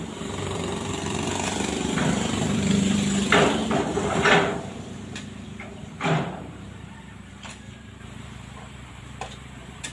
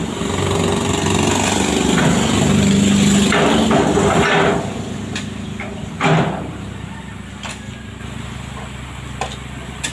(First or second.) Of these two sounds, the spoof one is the first